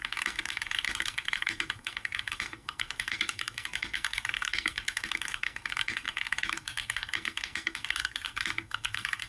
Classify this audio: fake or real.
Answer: fake